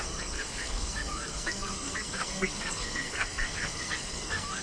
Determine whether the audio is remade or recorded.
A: remade